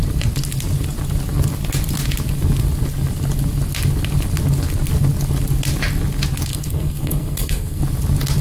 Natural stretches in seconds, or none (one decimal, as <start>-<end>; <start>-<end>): 0.0-6.5; 7.8-8.4